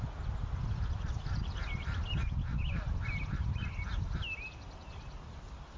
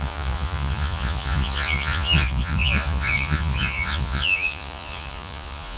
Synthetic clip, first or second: second